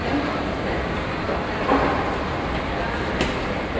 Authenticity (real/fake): real